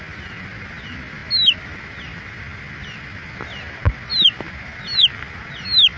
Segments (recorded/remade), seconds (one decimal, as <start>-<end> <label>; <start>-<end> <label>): 0.0-6.0 recorded